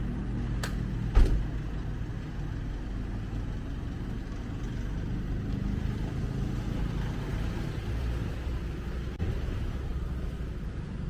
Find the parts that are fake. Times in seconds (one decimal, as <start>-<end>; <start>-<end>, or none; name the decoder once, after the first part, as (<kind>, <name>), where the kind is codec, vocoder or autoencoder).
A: 7.3-8.6 (vocoder, BigVGAN v2)